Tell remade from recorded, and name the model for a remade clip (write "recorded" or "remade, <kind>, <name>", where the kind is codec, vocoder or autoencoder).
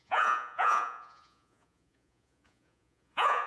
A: remade, vocoder, Vocos